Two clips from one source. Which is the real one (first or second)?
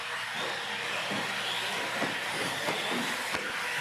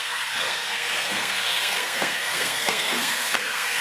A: first